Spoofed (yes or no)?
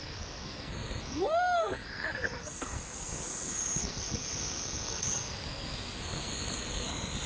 yes